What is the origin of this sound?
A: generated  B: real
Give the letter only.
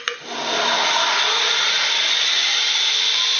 B